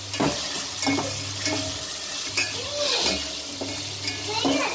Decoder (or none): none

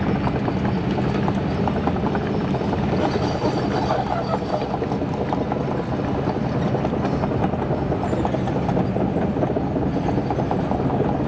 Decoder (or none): none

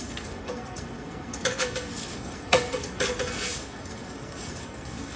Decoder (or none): codec, SNAC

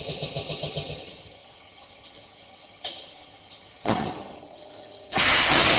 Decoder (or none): vocoder, HiFi-GAN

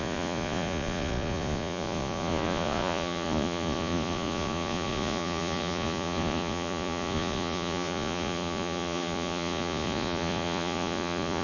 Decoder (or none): vocoder, Vocos